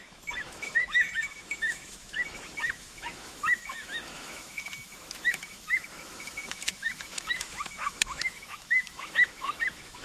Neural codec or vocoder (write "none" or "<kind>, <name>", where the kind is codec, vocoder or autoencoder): autoencoder, DAC-VAE